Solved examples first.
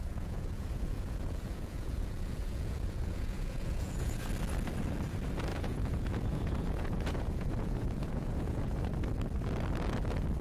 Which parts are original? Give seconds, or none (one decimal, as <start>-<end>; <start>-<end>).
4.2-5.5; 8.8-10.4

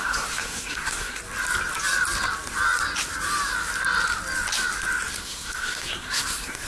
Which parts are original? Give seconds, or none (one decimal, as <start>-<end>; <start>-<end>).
1.2-5.2

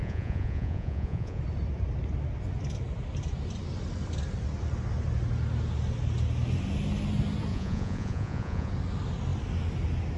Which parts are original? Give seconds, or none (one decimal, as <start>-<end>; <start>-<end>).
1.4-7.5; 8.7-10.2

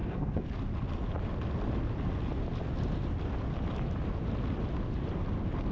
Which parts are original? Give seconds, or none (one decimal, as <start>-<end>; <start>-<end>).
0.5-5.7